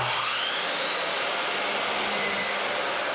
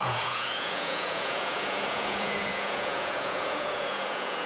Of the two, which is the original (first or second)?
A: first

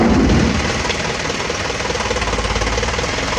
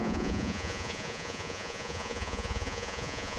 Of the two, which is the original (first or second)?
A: first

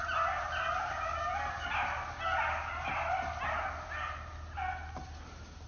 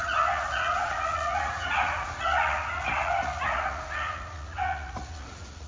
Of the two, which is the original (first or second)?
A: first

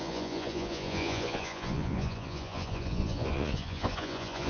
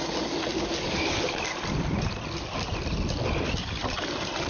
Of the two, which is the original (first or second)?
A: second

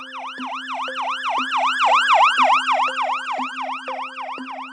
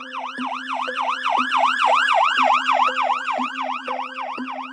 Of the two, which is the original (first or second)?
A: first